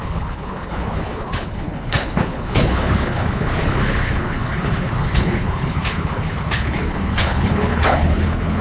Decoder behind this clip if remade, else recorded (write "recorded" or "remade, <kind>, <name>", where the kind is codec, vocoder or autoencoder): remade, codec, HILCodec